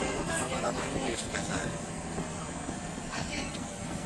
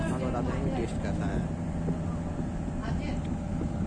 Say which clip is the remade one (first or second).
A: first